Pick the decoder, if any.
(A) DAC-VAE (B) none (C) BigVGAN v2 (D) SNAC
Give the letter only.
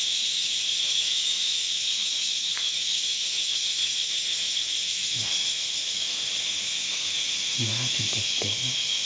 A